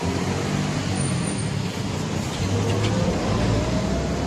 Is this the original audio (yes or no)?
yes